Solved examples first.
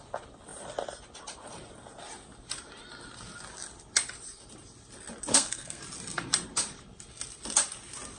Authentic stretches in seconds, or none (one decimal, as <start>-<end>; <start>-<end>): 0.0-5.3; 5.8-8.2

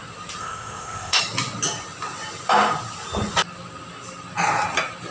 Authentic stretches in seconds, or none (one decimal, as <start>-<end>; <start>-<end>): 0.0-0.4; 1.2-5.1

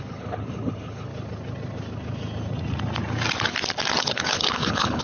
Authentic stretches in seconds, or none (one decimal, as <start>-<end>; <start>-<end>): 1.1-4.0

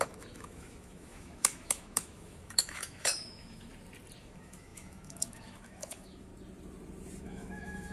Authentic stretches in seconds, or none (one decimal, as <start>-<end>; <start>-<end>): 3.7-4.2; 6.3-7.2

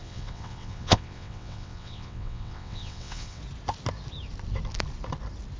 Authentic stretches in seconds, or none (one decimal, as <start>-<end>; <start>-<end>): 3.4-5.6

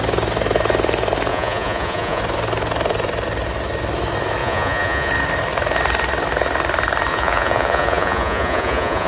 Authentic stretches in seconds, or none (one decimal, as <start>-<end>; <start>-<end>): 0.0-1.3; 2.2-4.4; 5.1-7.1